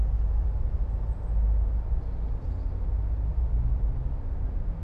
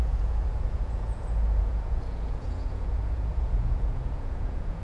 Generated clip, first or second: second